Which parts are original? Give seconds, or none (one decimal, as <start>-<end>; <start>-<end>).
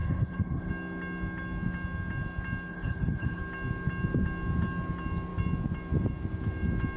0.7-2.7; 3.4-7.0